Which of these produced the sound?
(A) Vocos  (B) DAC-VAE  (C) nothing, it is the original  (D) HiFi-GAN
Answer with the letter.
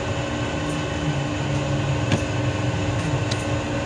C